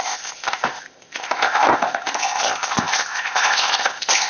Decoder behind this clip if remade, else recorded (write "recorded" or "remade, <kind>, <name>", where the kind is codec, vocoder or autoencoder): remade, codec, ZipCodec